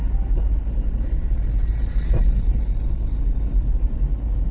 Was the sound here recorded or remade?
recorded